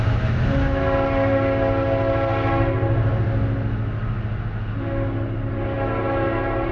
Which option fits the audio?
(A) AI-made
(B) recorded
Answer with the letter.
B